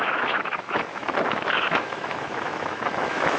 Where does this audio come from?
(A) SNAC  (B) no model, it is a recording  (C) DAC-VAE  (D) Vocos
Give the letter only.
C